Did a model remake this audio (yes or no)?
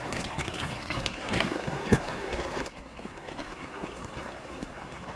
yes